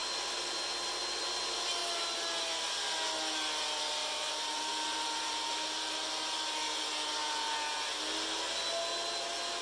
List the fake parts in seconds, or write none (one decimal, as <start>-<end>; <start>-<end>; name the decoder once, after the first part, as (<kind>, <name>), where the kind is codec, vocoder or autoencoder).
4.0-6.1 (vocoder, BigVGAN v2)